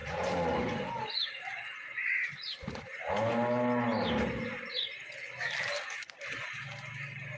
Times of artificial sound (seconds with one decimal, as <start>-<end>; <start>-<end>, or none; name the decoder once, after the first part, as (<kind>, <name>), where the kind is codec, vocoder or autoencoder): 0.0-3.1 (vocoder, BigVGAN v2)